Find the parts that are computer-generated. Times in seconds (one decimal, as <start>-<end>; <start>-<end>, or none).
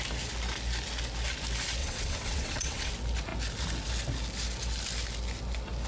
1.8-2.9